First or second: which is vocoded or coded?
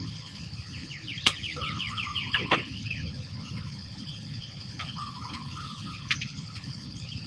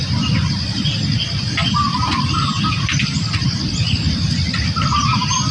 first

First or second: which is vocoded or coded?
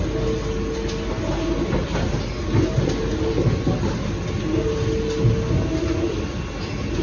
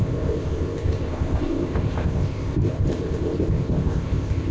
second